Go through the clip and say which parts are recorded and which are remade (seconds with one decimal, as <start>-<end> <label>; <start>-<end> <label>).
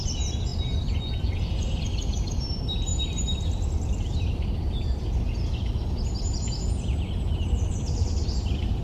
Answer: 0.0-8.8 recorded